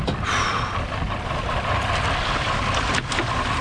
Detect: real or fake real